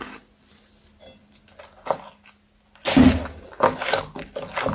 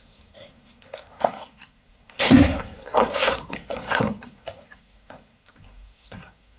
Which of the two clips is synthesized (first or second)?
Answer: second